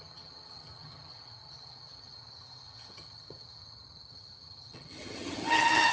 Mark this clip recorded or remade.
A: remade